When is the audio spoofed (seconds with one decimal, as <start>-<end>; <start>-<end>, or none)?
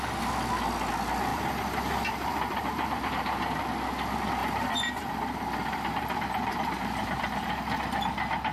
1.3-3.1; 4.4-7.6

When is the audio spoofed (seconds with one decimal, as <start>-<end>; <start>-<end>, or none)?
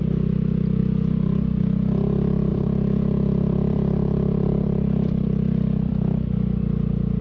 2.5-6.6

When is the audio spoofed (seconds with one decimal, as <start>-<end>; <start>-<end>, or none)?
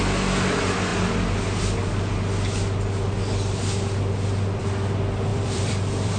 5.3-6.2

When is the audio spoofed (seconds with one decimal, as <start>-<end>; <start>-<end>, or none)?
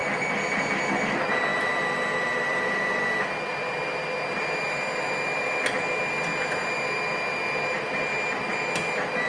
1.5-3.1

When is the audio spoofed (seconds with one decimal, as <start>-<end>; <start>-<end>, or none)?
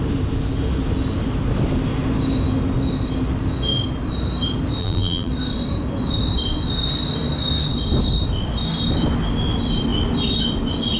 4.8-5.3